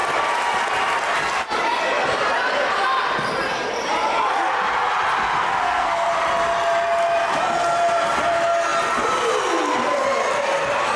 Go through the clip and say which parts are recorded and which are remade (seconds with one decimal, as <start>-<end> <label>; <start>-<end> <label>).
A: 0.0-5.4 recorded; 5.4-6.1 remade; 6.1-11.0 recorded